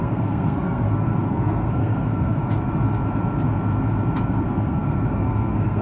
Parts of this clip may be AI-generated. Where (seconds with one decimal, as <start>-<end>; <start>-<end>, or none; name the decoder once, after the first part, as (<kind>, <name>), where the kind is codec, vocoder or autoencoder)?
0.0-2.4 (codec, SNAC); 4.3-5.8